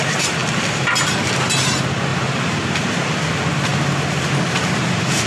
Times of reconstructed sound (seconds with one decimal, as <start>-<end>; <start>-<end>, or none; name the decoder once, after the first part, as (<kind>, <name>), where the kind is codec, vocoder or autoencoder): 0.4-1.3 (vocoder, BigVGAN v2); 2.1-2.8

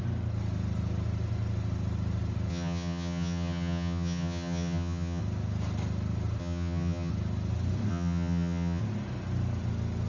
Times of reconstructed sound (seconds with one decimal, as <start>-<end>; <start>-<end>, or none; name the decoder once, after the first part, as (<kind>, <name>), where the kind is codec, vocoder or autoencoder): 2.5-5.2 (vocoder, HiFi-GAN); 6.4-7.1; 7.9-8.8